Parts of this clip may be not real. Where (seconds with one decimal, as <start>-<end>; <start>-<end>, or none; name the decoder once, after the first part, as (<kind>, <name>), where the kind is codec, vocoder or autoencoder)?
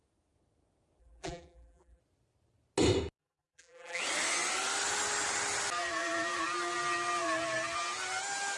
1.0-2.0 (vocoder, BigVGAN v2); 3.2-4.0